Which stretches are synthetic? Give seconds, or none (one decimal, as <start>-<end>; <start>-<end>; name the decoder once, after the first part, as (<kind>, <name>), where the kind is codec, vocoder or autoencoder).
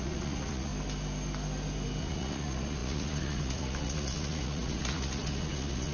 0.0-0.7 (vocoder, Vocos); 2.0-5.9